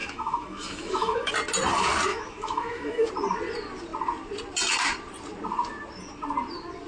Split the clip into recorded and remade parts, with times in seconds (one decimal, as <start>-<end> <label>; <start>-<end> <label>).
0.0-1.3 remade; 1.3-2.1 recorded; 2.1-3.1 remade; 3.1-6.9 recorded